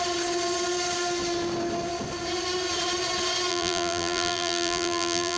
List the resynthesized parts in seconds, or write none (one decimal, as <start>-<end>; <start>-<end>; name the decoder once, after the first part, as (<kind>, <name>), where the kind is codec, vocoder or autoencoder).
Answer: 3.5-5.4 (vocoder, BigVGAN v2)